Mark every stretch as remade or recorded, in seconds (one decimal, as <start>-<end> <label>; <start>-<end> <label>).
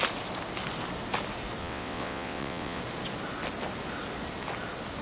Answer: 0.0-1.6 recorded; 1.6-2.8 remade; 2.8-5.0 recorded